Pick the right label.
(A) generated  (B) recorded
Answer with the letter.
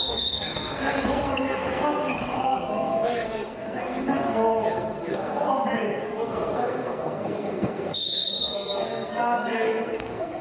A